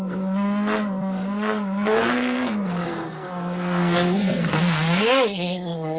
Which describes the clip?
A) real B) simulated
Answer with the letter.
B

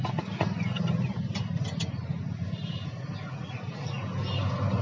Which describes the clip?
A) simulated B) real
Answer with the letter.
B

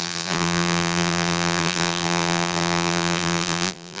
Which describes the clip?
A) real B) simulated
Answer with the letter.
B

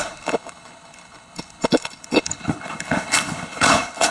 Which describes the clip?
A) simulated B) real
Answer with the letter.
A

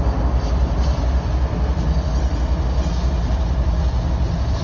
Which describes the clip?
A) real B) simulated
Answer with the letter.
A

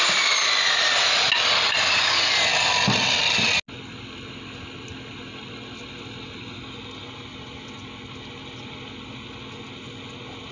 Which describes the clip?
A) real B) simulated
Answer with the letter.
A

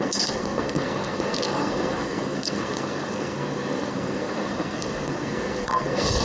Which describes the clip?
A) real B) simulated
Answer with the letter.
B